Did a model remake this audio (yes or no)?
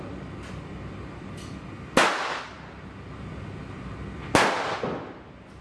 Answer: no